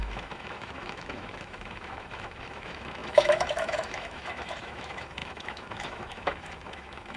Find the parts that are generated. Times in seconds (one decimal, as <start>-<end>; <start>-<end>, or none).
0.0-7.2